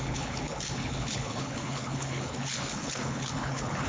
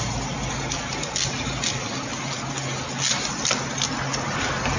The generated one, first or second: first